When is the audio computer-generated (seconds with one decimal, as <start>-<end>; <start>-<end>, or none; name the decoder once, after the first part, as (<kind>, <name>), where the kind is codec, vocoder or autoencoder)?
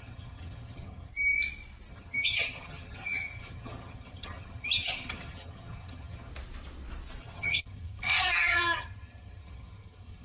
0.0-1.1 (vocoder, HiFi-GAN); 1.9-6.3; 7.2-10.2